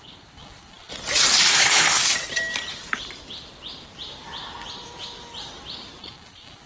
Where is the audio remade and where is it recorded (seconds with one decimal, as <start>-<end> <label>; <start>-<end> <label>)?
0.0-0.9 remade; 0.9-1.5 recorded; 1.5-2.0 remade; 2.0-6.0 recorded; 6.0-6.7 remade